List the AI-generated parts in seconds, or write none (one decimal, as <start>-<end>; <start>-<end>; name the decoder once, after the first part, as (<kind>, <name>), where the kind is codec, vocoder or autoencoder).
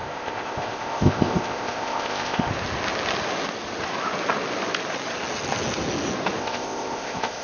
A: 0.0-2.5 (codec, ZipCodec); 6.4-7.4